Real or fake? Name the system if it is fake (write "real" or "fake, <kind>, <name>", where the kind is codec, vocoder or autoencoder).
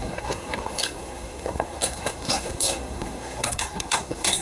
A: fake, codec, SNAC